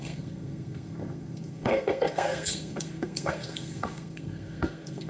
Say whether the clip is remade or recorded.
remade